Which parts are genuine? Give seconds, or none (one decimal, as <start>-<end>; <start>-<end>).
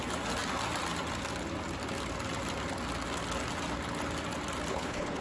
0.0-4.7